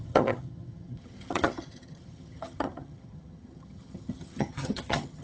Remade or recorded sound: remade